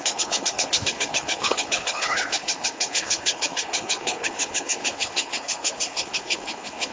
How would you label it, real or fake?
fake